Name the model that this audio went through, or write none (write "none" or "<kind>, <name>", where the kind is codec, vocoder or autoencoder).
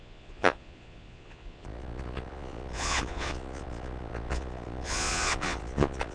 vocoder, Vocos